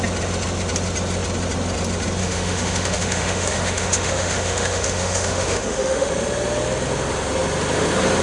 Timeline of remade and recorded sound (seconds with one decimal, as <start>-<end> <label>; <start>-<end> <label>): 0.0-2.2 recorded; 2.2-6.1 remade; 6.1-8.2 recorded